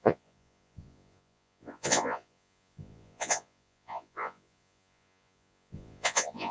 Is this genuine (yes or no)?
no